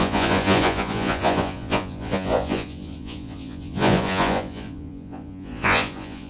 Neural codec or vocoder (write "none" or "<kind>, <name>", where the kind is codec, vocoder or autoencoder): vocoder, Vocos